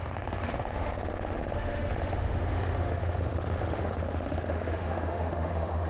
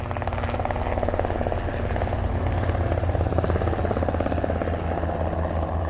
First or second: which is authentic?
second